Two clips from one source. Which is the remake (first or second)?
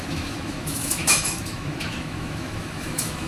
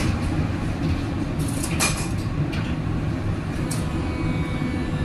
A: first